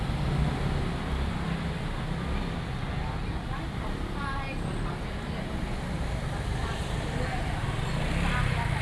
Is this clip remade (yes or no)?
no